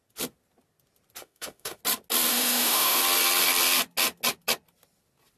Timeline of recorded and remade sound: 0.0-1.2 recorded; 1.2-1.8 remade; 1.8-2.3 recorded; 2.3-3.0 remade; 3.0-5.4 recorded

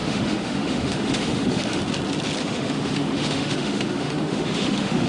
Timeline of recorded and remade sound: 0.0-1.8 remade; 1.8-2.4 recorded; 2.4-5.1 remade

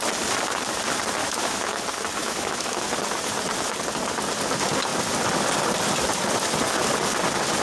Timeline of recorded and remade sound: 0.0-1.2 recorded; 1.2-1.8 remade; 1.8-2.2 recorded; 2.2-2.8 remade; 2.8-7.6 recorded

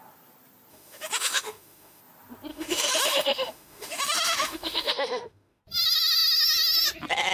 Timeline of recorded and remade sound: 0.0-0.7 recorded; 0.7-2.0 remade; 2.0-2.5 recorded; 2.5-5.6 remade; 5.6-7.3 recorded

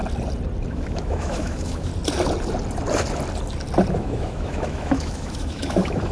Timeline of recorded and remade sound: 0.0-0.7 recorded; 0.7-1.9 remade; 1.9-3.9 recorded; 3.9-6.1 remade

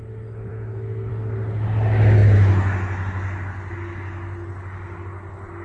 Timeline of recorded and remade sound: 0.0-0.5 recorded; 0.5-1.1 remade; 1.1-5.6 recorded